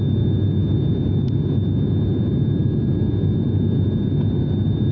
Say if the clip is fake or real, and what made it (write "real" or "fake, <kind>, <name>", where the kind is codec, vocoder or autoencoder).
real